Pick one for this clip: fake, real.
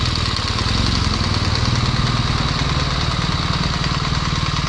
real